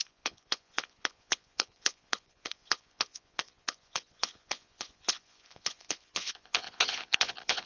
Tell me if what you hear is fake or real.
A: fake